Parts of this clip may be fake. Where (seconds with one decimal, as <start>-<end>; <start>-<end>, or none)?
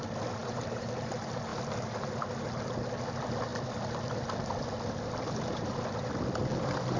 0.4-1.1